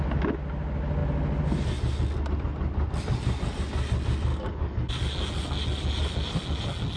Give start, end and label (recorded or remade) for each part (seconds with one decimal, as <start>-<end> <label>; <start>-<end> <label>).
0.0-4.3 recorded; 4.3-4.9 remade; 4.9-7.0 recorded